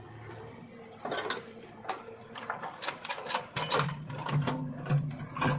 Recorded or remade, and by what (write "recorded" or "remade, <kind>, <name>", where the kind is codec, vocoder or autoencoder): remade, vocoder, BigVGAN v2